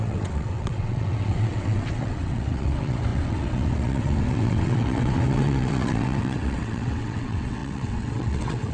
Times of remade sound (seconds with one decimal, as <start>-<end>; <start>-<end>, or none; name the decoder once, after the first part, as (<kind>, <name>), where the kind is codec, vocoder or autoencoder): 0.0-8.7 (vocoder, WaveNeXt)